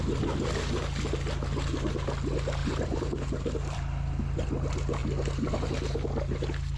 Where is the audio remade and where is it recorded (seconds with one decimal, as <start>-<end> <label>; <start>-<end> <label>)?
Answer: 0.0-2.6 recorded; 2.6-4.1 remade; 4.1-6.8 recorded